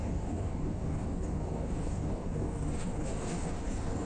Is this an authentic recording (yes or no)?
no